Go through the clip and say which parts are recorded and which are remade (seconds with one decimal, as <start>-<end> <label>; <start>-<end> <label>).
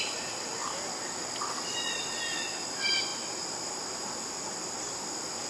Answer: 0.0-5.5 recorded